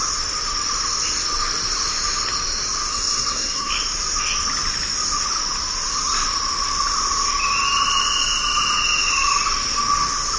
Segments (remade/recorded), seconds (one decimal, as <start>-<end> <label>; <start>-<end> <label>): 0.0-2.9 recorded; 2.9-3.7 remade; 3.7-10.4 recorded